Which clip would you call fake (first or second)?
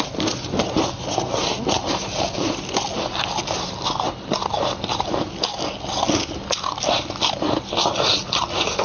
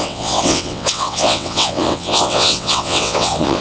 second